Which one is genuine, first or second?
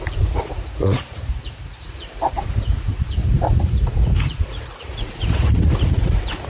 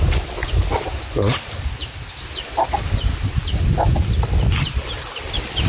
second